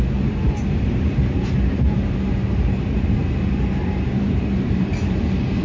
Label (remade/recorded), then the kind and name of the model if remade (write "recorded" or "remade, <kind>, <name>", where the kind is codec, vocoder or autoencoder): remade, vocoder, BigVGAN v2